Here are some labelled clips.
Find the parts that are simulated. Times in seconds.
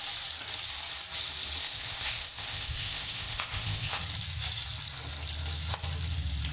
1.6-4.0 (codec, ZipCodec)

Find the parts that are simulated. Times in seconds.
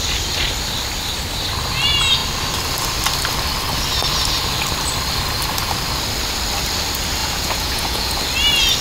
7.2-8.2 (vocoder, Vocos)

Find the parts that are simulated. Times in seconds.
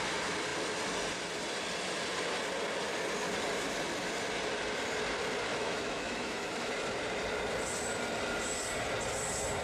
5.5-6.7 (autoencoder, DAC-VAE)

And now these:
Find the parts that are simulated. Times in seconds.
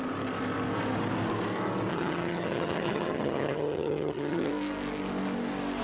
1.9-4.5 (vocoder, HiFi-GAN)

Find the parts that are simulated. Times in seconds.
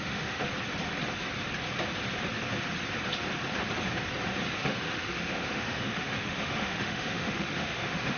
0.0-0.4 (autoencoder, DAC-VAE); 4.6-8.2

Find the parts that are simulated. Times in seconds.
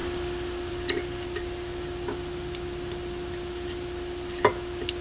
none